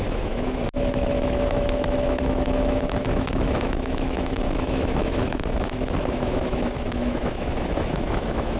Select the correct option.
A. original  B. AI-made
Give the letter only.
B